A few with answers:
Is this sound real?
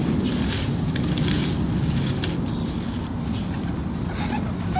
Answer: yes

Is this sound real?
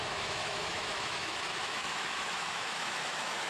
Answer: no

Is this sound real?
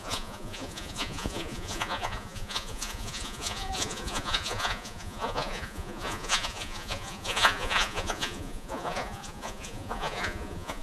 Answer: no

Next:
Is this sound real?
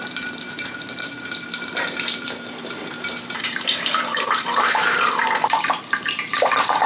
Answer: no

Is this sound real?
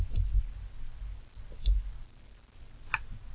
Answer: yes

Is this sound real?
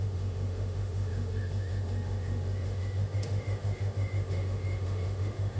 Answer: no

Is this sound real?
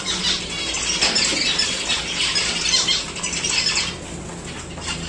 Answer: yes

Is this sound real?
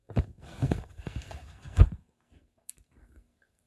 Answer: no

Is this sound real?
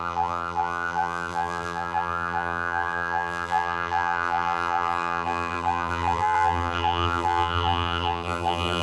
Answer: no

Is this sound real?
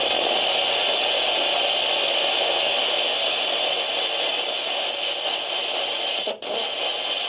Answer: yes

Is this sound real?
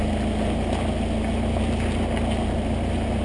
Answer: yes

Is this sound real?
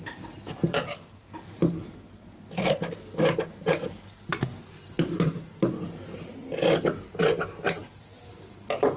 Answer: yes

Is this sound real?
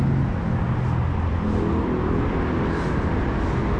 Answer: yes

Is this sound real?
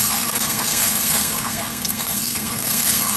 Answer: no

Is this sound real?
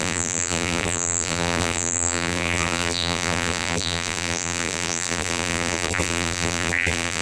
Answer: no